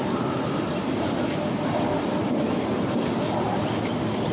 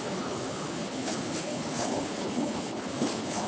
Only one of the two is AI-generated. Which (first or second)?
second